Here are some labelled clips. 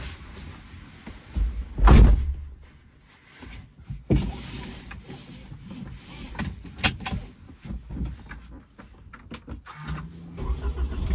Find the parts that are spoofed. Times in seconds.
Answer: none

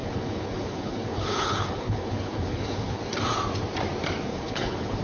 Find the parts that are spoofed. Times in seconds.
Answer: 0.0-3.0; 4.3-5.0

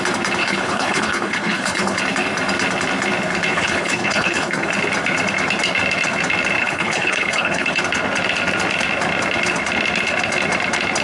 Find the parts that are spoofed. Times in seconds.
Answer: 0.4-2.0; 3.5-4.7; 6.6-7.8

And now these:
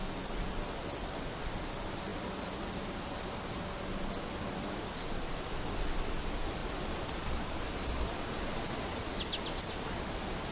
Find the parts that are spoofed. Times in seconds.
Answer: none

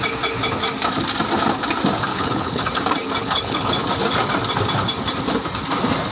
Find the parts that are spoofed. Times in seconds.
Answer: 2.1-2.7; 3.2-3.7